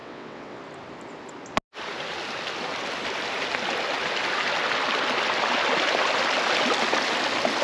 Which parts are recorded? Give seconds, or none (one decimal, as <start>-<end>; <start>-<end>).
0.6-7.6